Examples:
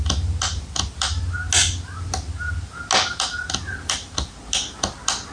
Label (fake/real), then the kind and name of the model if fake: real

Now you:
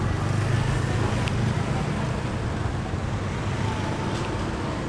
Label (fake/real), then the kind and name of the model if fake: real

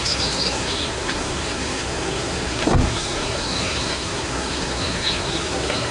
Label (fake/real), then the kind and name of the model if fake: fake, codec, SNAC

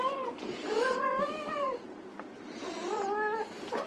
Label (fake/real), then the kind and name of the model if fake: real